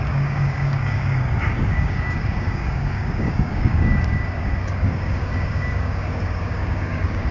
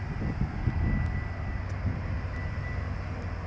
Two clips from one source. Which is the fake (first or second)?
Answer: first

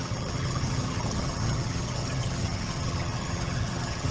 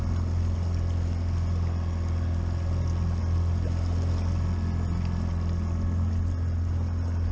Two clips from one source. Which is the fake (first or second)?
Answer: first